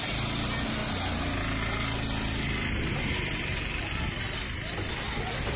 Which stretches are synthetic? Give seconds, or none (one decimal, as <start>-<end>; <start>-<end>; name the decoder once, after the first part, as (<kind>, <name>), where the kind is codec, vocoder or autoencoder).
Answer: none

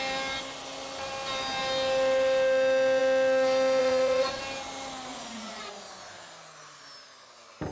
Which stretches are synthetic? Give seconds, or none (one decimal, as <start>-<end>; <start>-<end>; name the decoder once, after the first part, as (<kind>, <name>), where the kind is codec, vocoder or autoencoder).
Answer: 3.8-4.4 (vocoder, Vocos); 5.1-5.7